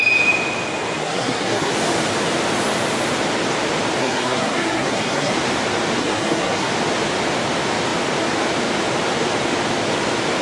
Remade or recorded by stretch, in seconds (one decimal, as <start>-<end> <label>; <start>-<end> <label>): 0.0-1.0 recorded; 1.0-1.7 remade; 1.7-4.0 recorded; 4.0-5.3 remade; 5.3-6.0 recorded; 6.0-6.7 remade; 6.7-10.4 recorded